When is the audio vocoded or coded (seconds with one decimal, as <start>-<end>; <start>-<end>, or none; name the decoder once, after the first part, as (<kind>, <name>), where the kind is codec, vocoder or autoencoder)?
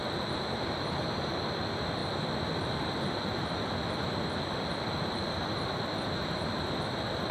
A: none